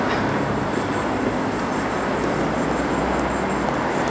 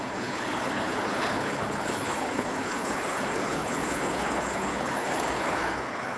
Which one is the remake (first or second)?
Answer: second